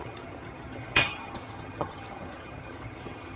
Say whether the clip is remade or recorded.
remade